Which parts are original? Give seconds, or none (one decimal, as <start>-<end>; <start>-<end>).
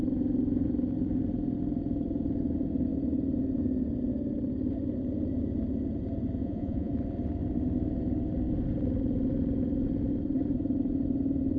0.0-6.4; 6.9-11.6